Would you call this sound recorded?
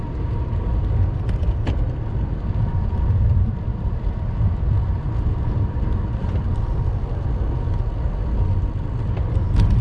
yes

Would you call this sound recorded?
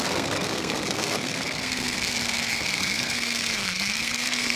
no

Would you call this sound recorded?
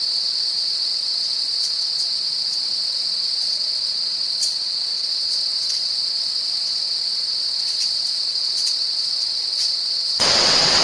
no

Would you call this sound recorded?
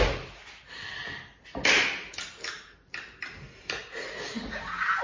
yes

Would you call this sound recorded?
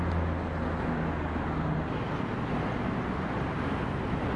yes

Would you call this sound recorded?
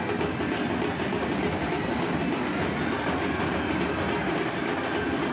yes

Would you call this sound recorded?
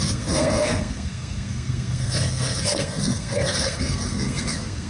no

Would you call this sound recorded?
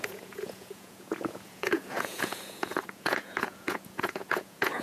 no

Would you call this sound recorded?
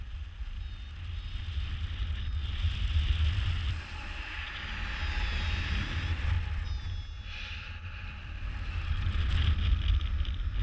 yes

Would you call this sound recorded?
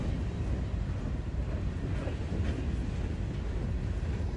yes